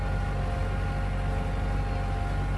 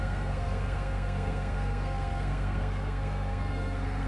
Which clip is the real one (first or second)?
first